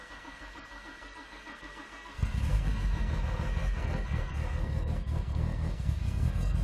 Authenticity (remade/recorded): remade